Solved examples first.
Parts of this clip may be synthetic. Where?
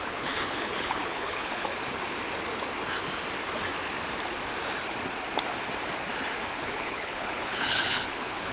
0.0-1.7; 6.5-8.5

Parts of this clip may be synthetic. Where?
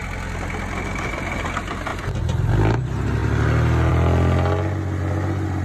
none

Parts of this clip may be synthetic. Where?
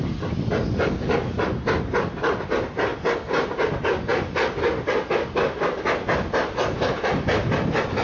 none